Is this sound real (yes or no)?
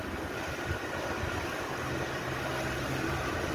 yes